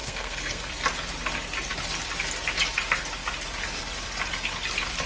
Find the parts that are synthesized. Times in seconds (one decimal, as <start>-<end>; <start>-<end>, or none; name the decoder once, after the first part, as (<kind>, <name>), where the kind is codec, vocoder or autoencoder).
0.0-0.7 (codec, SNAC)